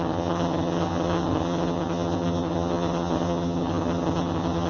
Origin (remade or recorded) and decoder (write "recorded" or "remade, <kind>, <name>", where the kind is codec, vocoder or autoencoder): remade, vocoder, HiFi-GAN